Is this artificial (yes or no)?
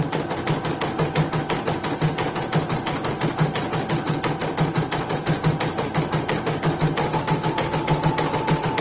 no